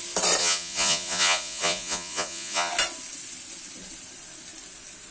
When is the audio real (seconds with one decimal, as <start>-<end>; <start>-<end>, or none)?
0.0-0.4; 2.7-5.1